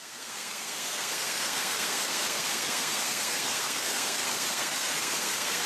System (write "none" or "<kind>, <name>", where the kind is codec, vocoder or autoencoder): codec, SNAC